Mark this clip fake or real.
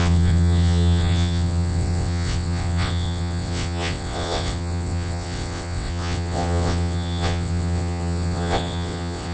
fake